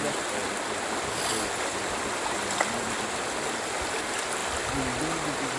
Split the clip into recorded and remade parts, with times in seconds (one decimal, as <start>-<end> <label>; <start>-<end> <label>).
0.0-5.6 recorded